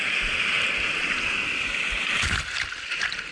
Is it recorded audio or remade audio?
remade